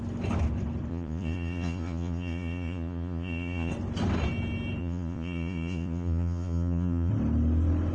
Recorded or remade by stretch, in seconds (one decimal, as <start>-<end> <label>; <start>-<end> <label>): 0.0-0.9 recorded; 0.9-3.7 remade; 3.7-4.8 recorded; 4.8-7.1 remade; 7.1-7.9 recorded